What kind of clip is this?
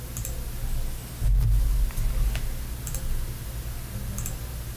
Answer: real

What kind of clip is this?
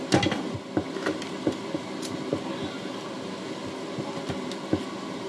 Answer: real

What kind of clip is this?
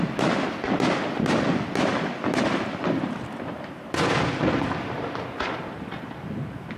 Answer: real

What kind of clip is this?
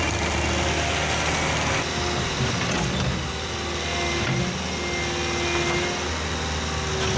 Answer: real